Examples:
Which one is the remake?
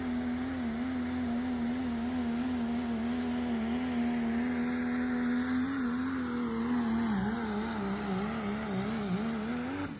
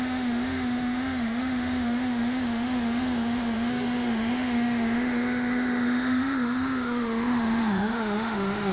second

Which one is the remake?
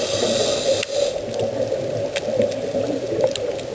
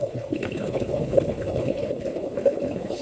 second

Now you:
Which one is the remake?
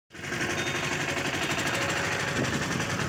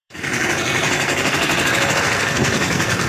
second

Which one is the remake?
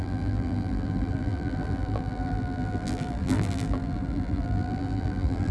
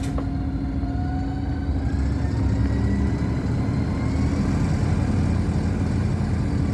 first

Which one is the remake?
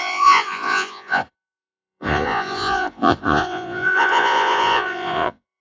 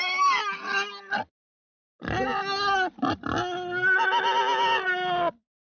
first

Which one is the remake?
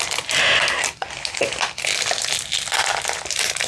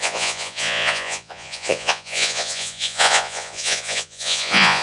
second